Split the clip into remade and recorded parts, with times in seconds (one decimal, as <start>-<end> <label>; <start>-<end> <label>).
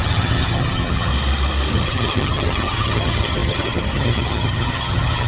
0.0-1.1 remade; 1.1-1.7 recorded; 1.7-5.3 remade